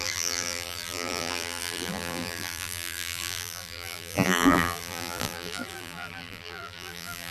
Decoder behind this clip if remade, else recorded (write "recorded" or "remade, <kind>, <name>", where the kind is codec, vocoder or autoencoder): remade, vocoder, BigVGAN v2